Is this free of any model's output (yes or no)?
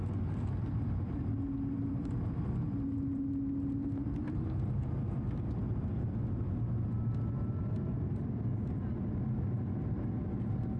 yes